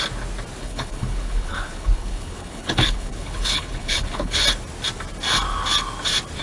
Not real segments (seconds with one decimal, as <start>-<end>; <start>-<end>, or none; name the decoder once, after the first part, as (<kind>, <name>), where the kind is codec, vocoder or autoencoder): 0.6-4.4 (codec, HILCodec)